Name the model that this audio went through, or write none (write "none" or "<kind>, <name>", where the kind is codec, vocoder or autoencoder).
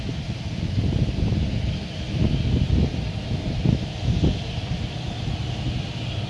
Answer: none